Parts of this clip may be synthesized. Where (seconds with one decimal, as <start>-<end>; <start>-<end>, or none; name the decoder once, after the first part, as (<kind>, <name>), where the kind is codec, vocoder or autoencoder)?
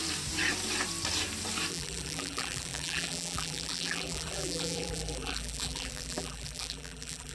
1.7-7.3 (vocoder, BigVGAN v2)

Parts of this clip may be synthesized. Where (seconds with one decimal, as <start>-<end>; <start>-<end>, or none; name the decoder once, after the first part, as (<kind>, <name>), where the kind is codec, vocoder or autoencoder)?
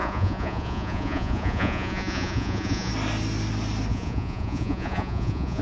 0.0-2.9 (vocoder, Vocos); 3.9-5.6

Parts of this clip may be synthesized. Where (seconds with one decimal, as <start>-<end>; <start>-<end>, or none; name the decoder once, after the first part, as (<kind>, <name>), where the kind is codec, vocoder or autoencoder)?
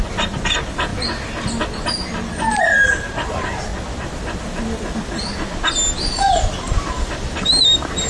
none